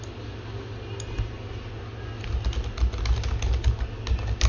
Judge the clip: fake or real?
real